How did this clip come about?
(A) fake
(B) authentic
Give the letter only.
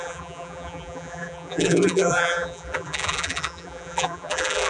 A